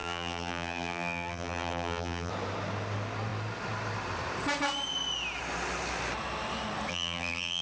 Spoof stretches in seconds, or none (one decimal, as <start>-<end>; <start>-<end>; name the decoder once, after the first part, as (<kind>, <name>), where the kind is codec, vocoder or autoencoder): 0.0-2.3 (vocoder, BigVGAN v2); 6.9-7.6